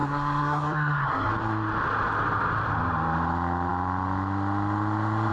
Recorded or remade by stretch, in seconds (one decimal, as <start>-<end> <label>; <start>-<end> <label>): 0.0-1.3 remade; 1.3-5.3 recorded